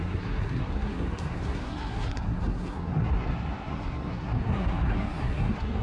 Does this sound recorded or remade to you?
remade